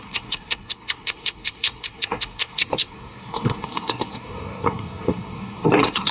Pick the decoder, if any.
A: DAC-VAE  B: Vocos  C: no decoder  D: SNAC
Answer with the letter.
D